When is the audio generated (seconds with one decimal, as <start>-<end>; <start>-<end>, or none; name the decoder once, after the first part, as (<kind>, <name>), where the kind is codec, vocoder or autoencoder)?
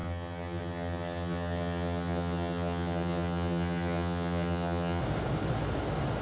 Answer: 0.0-5.0 (vocoder, HiFi-GAN)